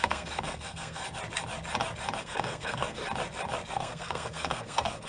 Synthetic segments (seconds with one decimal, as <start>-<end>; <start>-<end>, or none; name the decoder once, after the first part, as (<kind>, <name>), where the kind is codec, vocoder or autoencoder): 0.0-1.0 (codec, SNAC); 2.2-3.0; 3.7-5.1